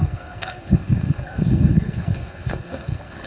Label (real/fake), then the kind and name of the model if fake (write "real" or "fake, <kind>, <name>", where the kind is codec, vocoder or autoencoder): fake, codec, SNAC